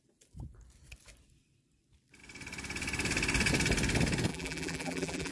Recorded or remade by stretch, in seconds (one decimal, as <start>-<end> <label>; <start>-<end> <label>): 0.0-4.3 recorded; 4.3-5.3 remade